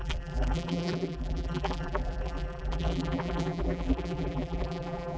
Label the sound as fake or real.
fake